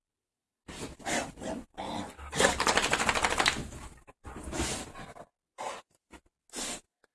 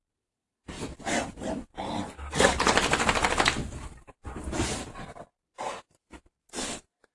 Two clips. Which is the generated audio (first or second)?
second